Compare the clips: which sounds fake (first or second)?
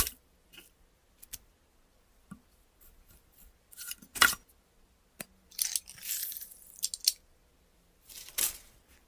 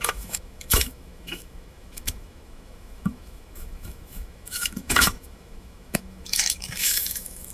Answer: second